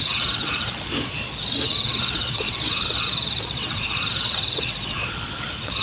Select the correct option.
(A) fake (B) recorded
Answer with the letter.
A